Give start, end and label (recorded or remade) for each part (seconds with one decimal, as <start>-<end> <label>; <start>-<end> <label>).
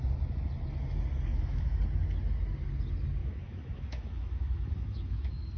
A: 0.0-1.3 recorded; 1.3-1.8 remade; 1.8-3.2 recorded; 3.2-5.6 remade